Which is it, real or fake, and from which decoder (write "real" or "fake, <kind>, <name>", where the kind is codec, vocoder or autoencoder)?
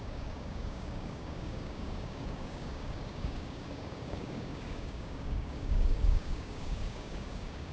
fake, codec, DAC